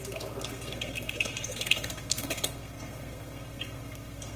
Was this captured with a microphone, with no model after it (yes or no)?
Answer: no